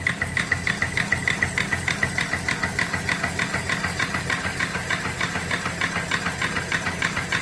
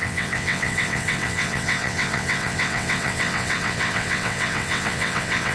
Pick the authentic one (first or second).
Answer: first